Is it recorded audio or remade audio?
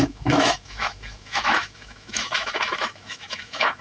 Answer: remade